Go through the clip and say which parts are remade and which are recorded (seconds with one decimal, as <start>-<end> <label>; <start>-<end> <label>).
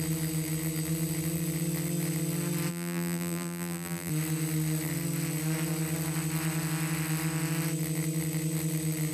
0.0-2.7 recorded; 2.7-4.1 remade; 4.1-9.1 recorded